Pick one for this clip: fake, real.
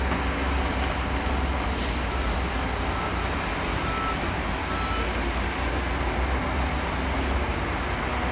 real